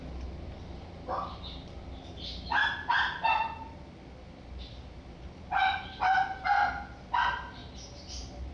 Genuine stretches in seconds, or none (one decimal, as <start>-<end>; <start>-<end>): 0.0-8.5